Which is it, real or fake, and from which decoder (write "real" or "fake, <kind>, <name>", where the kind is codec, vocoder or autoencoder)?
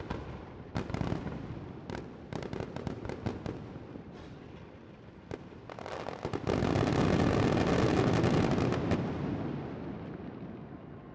real